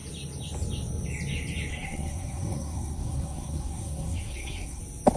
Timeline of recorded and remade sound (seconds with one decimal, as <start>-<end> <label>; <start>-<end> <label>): 0.0-1.7 recorded; 1.7-4.8 remade; 4.8-5.2 recorded